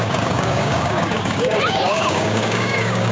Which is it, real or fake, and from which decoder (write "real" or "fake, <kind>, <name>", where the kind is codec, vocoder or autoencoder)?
fake, codec, DAC